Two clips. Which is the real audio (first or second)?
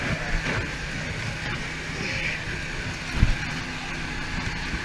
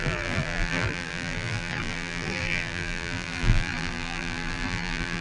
first